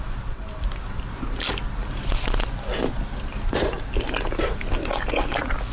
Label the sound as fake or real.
fake